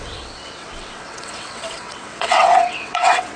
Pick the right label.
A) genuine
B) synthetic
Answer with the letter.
B